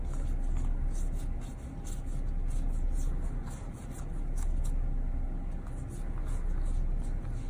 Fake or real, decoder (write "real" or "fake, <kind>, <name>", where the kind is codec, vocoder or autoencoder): real